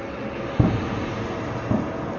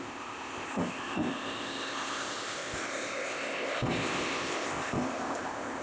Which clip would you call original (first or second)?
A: first